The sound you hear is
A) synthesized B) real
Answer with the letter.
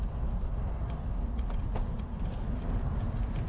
B